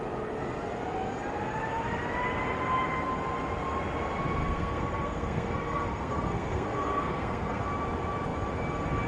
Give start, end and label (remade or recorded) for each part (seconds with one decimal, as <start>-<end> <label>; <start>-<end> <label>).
0.0-4.4 recorded; 4.4-7.6 remade; 7.6-9.1 recorded